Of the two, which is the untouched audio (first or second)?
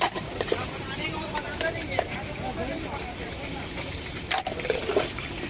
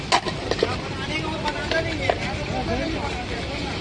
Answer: second